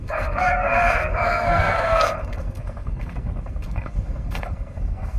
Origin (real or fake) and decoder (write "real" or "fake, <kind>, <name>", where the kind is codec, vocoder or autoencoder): fake, codec, SNAC